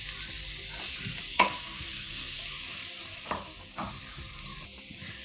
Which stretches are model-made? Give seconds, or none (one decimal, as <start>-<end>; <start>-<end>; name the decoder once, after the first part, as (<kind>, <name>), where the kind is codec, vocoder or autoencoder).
1.3-2.4 (codec, SNAC)

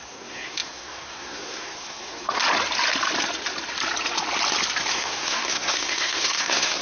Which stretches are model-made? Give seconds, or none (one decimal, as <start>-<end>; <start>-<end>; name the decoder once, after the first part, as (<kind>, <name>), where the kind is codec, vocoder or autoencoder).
0.0-2.4 (codec, SNAC); 4.9-6.8

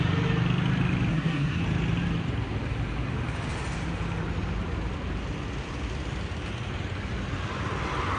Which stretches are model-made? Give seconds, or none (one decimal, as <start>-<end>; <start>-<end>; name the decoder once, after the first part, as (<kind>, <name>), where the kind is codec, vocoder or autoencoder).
1.1-1.6 (codec, SNAC)

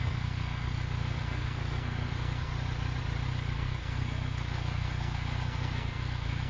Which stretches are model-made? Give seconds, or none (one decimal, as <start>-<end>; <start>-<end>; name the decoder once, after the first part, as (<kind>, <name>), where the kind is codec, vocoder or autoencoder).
0.0-2.5 (codec, SNAC); 3.5-6.5

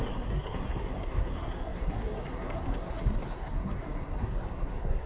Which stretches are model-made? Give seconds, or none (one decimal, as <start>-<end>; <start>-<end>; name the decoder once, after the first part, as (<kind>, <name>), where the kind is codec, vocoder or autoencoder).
0.0-5.1 (codec, SNAC)

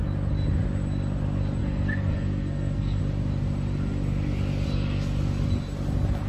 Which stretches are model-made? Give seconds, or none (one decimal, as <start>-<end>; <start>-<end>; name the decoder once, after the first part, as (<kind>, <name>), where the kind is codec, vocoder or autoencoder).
1.6-3.0 (codec, SNAC)

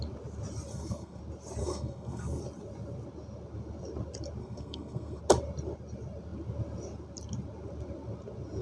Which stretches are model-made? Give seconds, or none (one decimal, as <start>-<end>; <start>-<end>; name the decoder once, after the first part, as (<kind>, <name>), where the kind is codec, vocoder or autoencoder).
0.7-1.2 (codec, SNAC); 1.6-2.4; 4.4-5.2